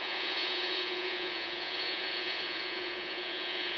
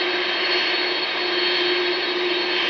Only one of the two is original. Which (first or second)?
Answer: second